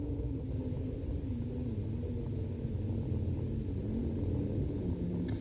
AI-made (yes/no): no